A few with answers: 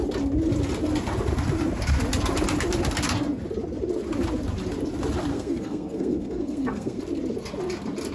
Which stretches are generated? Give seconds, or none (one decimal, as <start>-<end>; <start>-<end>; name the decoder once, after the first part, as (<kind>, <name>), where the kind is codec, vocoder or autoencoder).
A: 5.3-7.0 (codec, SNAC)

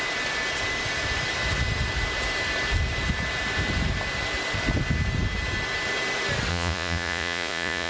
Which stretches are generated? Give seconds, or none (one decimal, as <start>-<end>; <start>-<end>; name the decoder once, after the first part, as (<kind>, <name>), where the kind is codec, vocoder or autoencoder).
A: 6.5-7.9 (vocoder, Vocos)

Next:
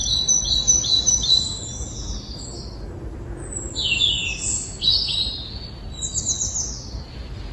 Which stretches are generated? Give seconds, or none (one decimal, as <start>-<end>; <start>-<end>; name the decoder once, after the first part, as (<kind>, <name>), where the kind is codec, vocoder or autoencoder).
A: none